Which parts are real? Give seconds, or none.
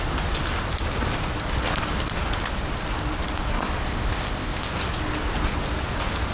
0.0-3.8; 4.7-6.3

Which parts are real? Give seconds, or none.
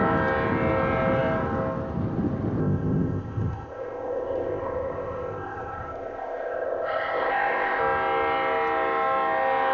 0.0-2.6; 7.8-9.7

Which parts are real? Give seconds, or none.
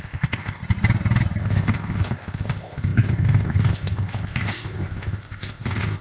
0.6-1.4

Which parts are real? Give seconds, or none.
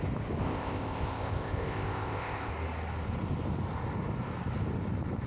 0.0-0.4; 2.5-5.3